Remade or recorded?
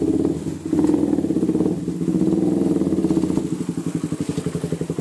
recorded